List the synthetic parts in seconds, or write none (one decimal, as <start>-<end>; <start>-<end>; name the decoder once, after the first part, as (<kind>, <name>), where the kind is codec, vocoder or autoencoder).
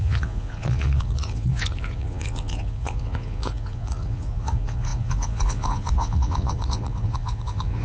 0.0-7.8 (vocoder, Vocos)